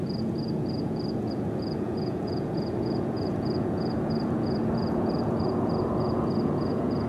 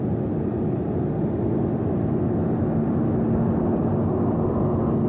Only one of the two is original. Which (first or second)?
second